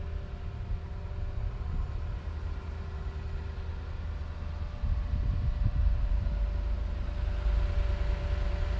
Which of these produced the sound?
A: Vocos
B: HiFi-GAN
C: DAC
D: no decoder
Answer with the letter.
D